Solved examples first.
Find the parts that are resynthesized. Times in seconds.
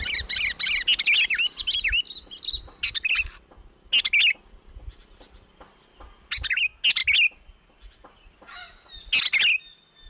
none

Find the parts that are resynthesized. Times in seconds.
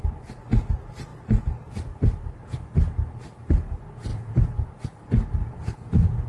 1.1-1.7 (vocoder, Vocos); 4.1-4.7; 5.4-6.3